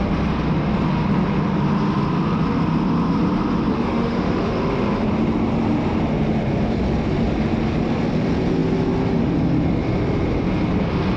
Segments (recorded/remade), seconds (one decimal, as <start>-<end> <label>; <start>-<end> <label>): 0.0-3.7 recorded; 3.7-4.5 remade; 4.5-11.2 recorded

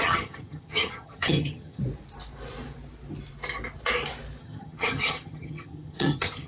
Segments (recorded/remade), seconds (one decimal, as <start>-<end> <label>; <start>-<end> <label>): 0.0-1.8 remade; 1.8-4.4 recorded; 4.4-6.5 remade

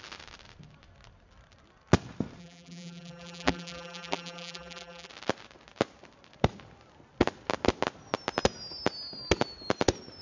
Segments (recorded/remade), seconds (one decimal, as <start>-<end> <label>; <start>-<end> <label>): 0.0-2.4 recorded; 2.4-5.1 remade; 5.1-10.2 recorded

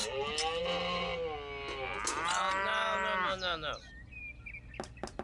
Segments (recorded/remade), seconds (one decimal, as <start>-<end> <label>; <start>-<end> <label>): 0.0-5.2 recorded

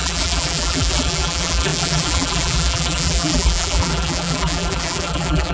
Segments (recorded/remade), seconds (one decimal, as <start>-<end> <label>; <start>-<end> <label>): 0.0-5.5 remade

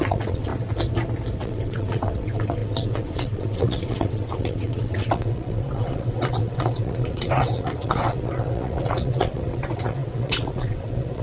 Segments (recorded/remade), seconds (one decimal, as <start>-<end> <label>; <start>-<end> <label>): 0.0-0.5 remade; 0.5-1.4 recorded; 1.4-11.2 remade

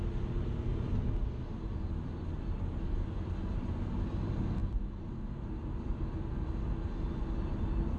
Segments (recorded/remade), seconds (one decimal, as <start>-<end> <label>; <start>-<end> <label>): 0.0-8.0 recorded